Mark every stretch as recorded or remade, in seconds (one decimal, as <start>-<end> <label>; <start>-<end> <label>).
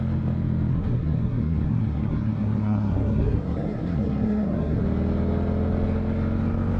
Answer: 0.0-0.7 recorded; 0.7-4.8 remade; 4.8-6.8 recorded